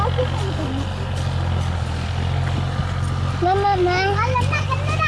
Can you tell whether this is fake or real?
real